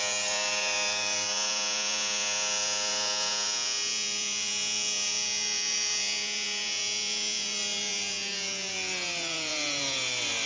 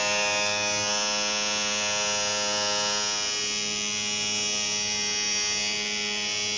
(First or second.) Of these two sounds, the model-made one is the first